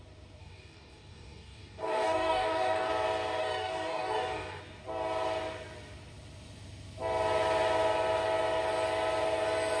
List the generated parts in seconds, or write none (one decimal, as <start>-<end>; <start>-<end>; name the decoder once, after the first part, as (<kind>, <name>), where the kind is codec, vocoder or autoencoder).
0.4-2.9 (codec, DAC); 3.4-4.6